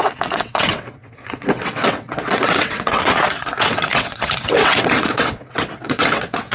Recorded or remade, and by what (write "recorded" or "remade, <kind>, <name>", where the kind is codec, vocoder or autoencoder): remade, vocoder, WaveNeXt